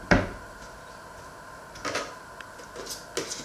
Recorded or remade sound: recorded